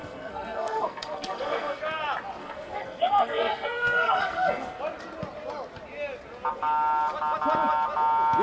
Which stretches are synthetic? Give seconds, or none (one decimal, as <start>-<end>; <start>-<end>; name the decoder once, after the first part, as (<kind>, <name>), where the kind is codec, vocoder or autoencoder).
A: 0.0-1.8 (codec, SNAC); 2.4-4.8